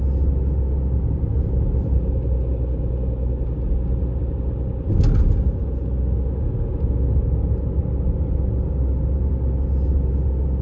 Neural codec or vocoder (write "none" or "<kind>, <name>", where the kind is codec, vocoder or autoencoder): none